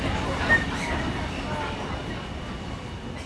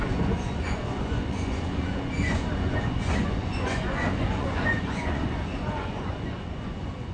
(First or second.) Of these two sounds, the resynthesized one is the second